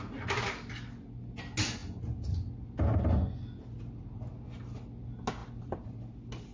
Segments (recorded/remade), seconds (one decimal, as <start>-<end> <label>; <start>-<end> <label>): 0.0-5.4 recorded; 5.4-6.1 remade; 6.1-6.5 recorded